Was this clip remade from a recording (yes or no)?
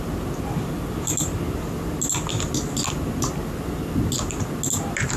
no